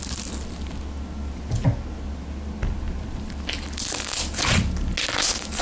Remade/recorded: recorded